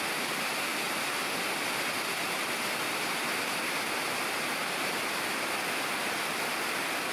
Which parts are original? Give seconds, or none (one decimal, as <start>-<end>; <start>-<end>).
0.0-7.1

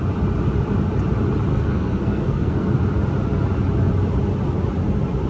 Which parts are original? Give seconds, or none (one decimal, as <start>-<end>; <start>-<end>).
0.0-1.5; 2.7-5.3